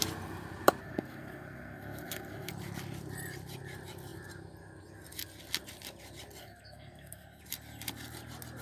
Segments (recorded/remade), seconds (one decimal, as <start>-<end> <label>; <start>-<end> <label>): 0.0-0.8 recorded; 0.8-2.5 remade; 2.5-6.4 recorded; 6.4-7.4 remade; 7.4-8.6 recorded